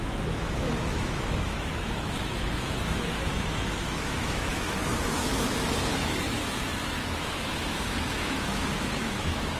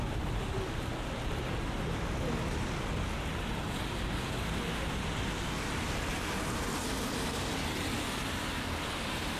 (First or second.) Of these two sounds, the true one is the second